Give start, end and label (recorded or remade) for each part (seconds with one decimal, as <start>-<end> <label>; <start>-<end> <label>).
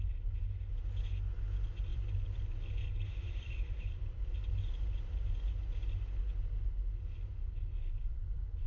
0.0-1.9 recorded; 1.9-4.6 remade; 4.6-7.7 recorded; 7.7-8.7 remade